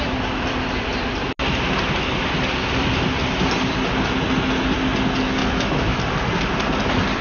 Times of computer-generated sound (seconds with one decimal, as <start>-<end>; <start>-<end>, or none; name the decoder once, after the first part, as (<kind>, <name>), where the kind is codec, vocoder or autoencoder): 5.4-6.0 (autoencoder, DAC-VAE)